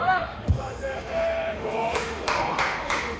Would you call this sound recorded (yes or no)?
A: no